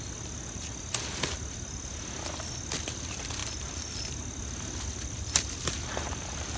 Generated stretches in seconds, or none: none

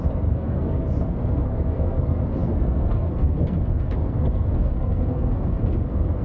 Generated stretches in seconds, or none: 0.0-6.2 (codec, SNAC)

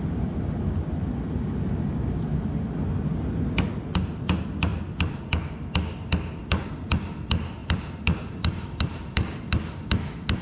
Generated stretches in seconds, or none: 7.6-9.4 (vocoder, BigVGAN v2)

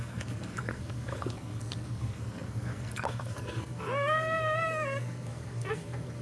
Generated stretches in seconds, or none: 0.0-6.2 (codec, SNAC)

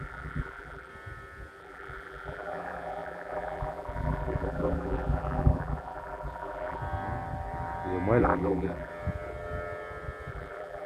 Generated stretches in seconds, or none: 0.0-0.9 (vocoder, BigVGAN v2); 1.6-6.8; 8.2-8.9; 10.3-10.9

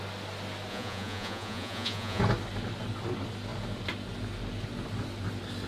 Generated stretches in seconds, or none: 0.7-2.2 (vocoder, Vocos)

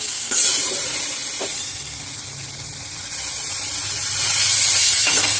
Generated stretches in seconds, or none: 0.0-0.4 (codec, SNAC); 1.5-2.0; 4.8-5.4